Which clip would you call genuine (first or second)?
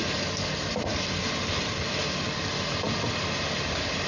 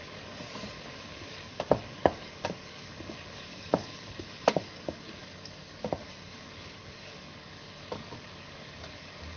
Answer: first